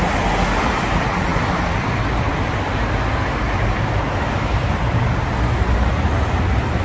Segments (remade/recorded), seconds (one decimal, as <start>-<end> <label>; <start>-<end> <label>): 0.0-1.3 recorded; 1.3-2.7 remade; 2.7-6.8 recorded